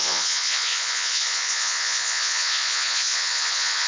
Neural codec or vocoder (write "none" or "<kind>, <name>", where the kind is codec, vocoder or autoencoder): vocoder, Vocos